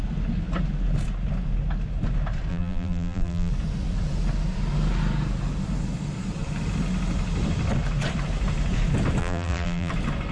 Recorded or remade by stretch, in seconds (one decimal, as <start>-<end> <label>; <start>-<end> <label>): 0.0-2.5 recorded; 2.5-3.5 remade; 3.5-9.2 recorded; 9.2-9.9 remade; 9.9-10.3 recorded